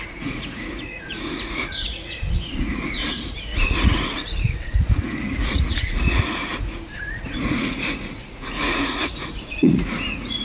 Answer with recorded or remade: remade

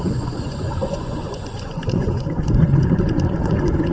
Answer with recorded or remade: remade